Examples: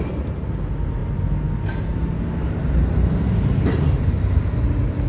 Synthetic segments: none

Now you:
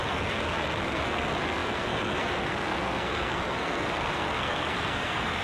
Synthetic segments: 0.0-5.4 (codec, SNAC)

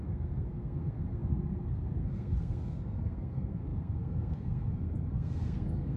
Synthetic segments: 0.0-6.0 (codec, SNAC)